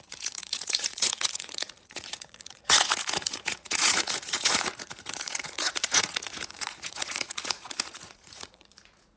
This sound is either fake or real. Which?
fake